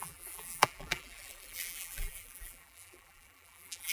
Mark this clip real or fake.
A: fake